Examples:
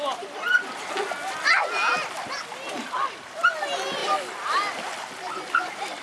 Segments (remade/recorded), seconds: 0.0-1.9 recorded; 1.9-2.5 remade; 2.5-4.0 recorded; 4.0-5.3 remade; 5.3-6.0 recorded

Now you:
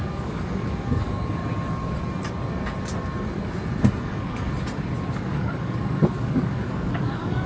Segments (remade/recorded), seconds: 0.0-1.4 remade; 1.4-4.0 recorded; 4.0-4.5 remade; 4.5-5.1 recorded; 5.1-7.5 remade

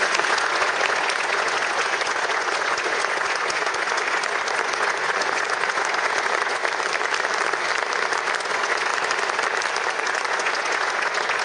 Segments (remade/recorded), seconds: 0.0-6.6 remade; 6.6-8.4 recorded; 8.4-8.9 remade; 8.9-9.9 recorded; 9.9-11.4 remade